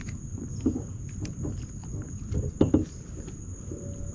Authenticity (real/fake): real